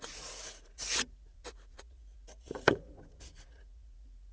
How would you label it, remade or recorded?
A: remade